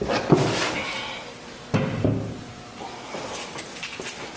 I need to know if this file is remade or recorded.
recorded